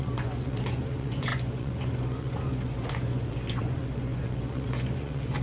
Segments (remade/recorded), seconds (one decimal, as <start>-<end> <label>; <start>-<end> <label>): 0.0-5.4 remade